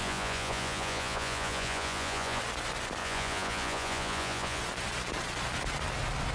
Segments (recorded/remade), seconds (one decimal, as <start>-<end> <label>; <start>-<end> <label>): 0.0-2.4 remade; 2.4-3.0 recorded; 3.0-4.6 remade; 4.6-6.3 recorded

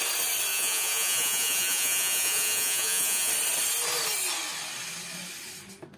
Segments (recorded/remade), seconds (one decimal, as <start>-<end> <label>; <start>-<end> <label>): 0.0-0.5 recorded; 0.5-3.3 remade; 3.3-6.0 recorded

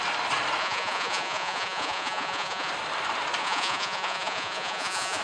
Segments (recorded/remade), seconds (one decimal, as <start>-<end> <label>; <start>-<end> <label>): 0.0-0.6 recorded; 0.6-2.7 remade; 2.7-3.4 recorded; 3.4-5.2 remade

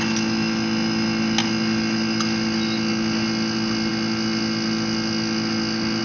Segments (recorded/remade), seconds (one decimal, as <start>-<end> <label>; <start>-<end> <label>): 0.0-6.0 recorded

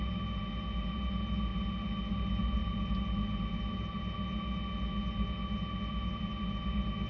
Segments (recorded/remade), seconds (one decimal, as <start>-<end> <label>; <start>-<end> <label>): 0.0-7.1 recorded